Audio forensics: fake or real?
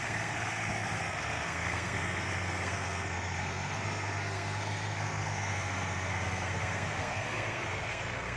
fake